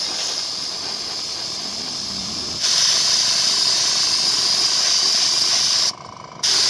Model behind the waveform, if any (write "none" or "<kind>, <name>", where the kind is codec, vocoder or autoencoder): none